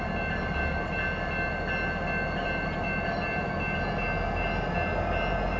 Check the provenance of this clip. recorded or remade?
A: recorded